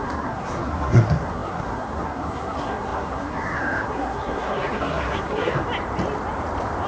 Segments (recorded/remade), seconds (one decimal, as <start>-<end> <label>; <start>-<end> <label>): 0.0-5.6 remade; 5.6-6.9 recorded